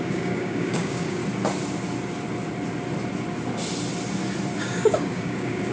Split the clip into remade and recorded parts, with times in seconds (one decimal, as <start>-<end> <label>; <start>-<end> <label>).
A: 0.0-1.2 remade; 1.2-4.6 recorded; 4.6-5.7 remade